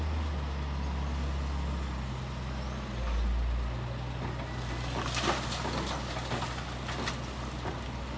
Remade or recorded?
recorded